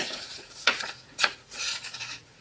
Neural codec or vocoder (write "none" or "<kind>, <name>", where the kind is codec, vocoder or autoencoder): vocoder, Vocos